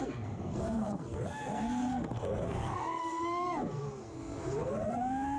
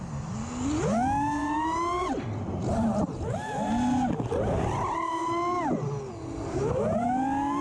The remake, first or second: first